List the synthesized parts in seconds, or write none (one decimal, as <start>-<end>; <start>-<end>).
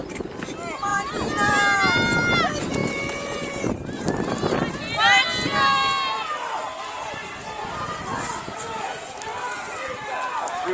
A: none